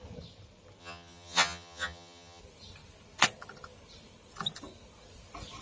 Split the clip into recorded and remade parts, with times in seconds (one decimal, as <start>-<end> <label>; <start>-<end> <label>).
0.0-0.8 recorded; 0.8-2.4 remade; 2.4-5.6 recorded